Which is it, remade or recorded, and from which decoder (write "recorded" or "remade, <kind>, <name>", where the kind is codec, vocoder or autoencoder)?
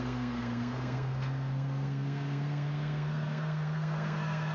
remade, codec, SNAC